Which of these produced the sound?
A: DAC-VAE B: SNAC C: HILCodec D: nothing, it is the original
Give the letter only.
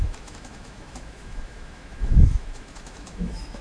A